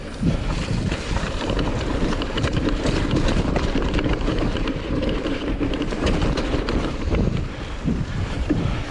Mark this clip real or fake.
fake